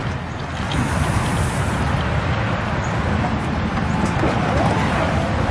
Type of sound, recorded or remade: recorded